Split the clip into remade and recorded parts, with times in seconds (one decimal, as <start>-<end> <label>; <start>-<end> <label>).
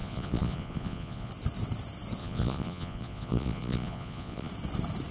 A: 0.0-1.3 remade; 1.3-2.2 recorded; 2.2-4.5 remade; 4.5-5.1 recorded